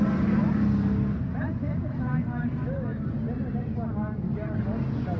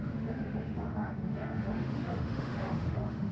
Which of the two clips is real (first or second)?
first